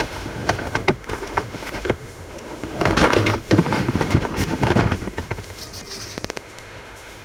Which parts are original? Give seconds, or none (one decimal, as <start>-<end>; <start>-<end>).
5.6-6.3

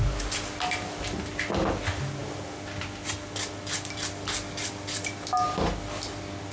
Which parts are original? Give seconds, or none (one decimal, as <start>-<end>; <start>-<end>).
0.0-6.5